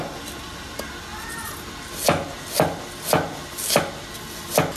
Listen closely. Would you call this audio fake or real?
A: real